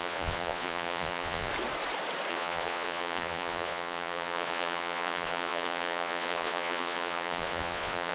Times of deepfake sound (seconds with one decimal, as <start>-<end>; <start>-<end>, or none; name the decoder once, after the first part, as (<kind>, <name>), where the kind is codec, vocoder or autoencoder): 0.0-1.5 (vocoder, Vocos); 2.3-8.1